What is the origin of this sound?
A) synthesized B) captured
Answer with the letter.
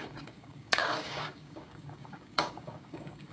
A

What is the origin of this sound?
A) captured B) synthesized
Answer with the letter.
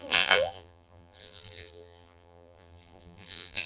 B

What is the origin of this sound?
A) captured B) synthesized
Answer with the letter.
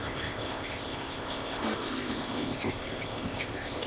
B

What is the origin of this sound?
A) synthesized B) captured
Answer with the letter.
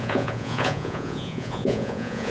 A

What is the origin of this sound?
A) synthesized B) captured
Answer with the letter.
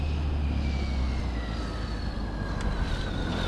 B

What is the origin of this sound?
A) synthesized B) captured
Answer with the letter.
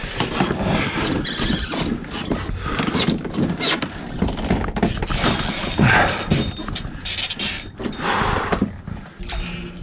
B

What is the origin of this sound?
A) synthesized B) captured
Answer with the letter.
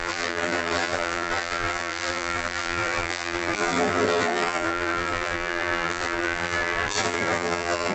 A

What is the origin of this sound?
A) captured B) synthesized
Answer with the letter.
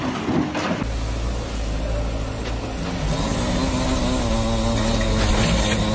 A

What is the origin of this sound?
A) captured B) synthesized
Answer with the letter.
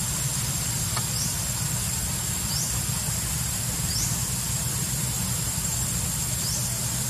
B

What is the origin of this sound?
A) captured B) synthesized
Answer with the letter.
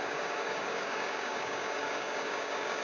B